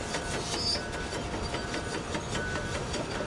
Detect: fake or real real